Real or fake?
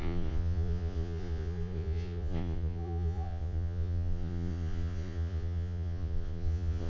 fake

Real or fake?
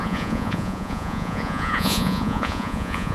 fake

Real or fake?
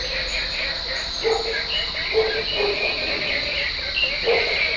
real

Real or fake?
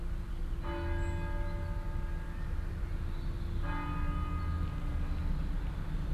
real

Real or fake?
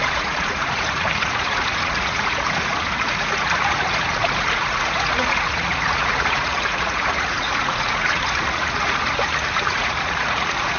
fake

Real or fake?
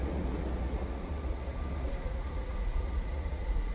fake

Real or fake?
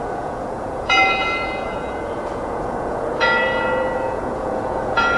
fake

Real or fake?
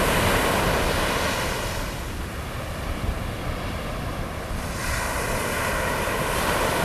real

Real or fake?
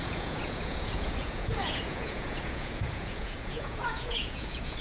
fake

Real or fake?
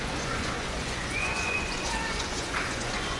fake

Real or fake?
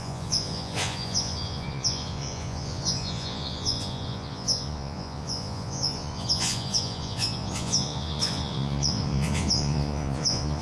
fake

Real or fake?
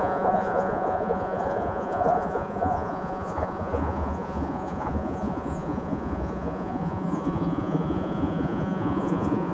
fake